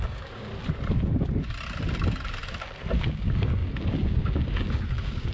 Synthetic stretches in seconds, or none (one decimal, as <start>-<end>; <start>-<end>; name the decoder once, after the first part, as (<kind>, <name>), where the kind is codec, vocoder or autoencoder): 0.0-0.5 (codec, DAC); 3.1-5.3